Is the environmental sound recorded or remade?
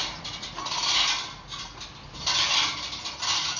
recorded